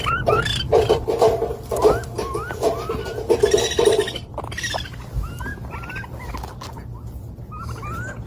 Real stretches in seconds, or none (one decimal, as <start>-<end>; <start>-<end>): 0.0-4.0; 4.7-5.5; 6.3-8.3

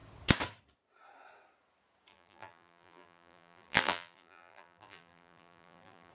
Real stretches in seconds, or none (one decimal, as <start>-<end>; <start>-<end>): 0.0-2.1

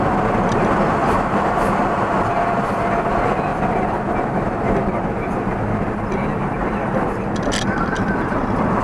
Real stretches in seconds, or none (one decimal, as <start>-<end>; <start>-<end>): 0.0-1.0; 2.2-8.8

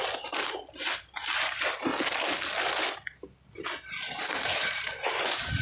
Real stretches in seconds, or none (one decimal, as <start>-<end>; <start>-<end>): 1.9-4.1

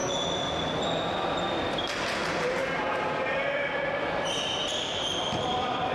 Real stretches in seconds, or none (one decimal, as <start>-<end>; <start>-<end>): 0.0-1.0; 2.6-3.4

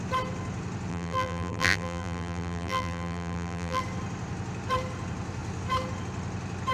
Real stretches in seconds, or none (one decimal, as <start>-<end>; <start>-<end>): 0.0-0.9; 3.8-6.7

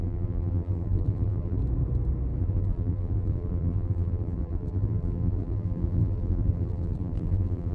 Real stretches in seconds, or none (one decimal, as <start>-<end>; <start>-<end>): 1.6-2.4